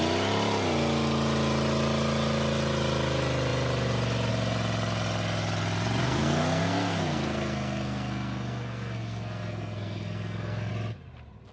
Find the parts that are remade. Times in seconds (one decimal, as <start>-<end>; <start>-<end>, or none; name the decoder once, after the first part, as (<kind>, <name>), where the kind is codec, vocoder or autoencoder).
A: 6.0-10.7 (codec, SNAC)